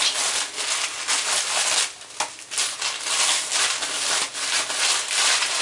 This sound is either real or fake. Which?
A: real